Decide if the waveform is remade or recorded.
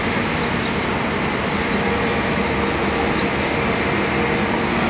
recorded